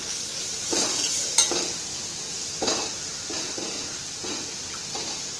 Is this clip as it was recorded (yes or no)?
yes